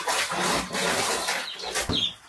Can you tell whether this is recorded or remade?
recorded